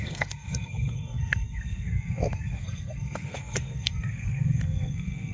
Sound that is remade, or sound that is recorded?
remade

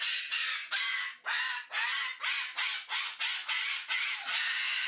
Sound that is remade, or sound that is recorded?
recorded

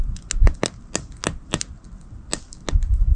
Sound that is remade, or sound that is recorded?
recorded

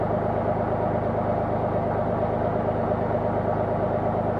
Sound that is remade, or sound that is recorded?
recorded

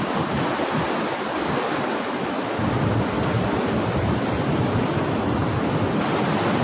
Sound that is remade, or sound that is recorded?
recorded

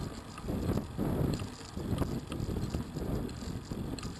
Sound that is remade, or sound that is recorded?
recorded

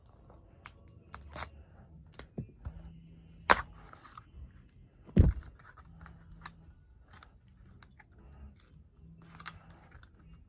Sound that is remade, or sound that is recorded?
recorded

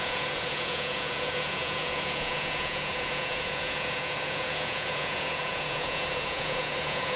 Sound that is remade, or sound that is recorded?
remade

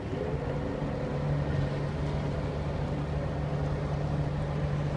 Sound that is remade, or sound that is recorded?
recorded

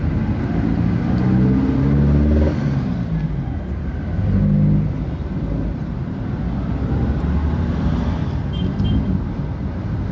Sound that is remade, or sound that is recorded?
recorded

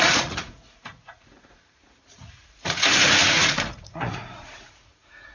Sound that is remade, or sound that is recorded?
remade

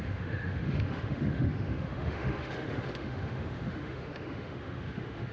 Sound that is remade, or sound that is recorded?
remade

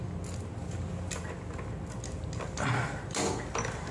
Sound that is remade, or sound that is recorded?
recorded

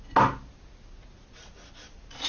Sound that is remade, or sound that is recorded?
recorded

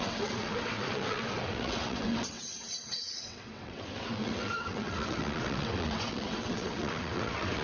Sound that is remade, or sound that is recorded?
remade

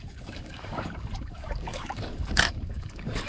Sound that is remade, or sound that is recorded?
remade